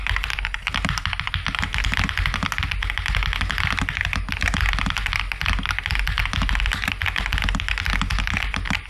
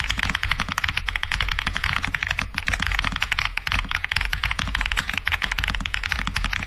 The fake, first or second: second